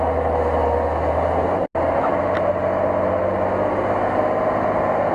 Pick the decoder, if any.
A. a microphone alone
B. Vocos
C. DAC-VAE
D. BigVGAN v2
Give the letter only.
A